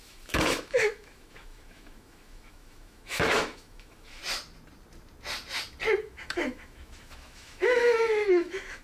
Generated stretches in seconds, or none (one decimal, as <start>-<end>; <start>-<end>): 0.0-4.2; 6.0-8.8